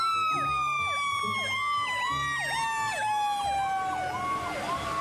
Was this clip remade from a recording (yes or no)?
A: no